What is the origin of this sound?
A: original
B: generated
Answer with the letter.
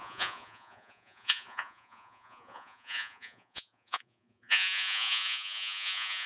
B